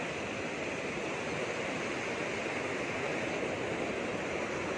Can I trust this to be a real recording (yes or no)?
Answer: yes